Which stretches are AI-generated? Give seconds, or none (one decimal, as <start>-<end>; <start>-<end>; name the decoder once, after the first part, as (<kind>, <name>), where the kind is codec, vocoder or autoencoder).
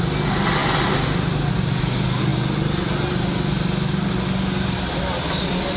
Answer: none